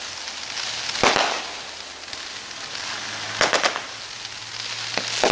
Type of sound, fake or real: real